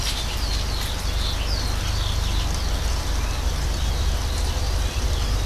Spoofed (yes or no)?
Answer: yes